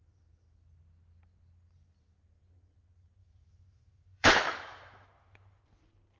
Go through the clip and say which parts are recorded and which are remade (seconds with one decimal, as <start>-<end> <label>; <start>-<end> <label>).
0.0-3.2 recorded; 3.2-5.6 remade; 5.6-6.2 recorded